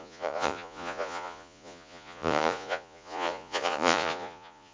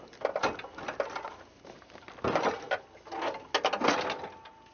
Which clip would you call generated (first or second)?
first